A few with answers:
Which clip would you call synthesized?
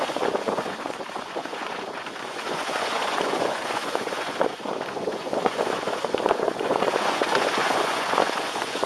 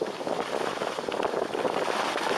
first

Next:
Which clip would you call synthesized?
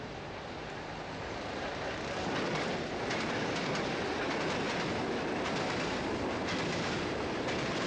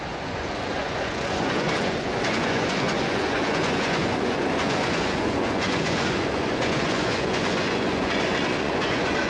second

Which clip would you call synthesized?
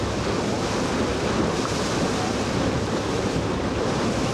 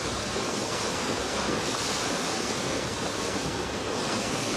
second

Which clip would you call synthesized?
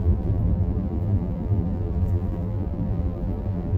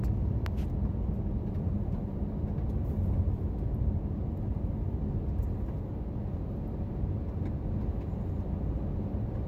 first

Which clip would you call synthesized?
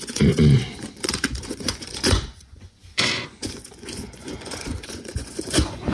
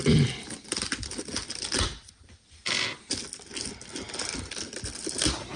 first